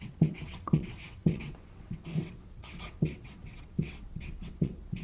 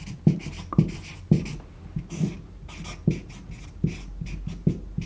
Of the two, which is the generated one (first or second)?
first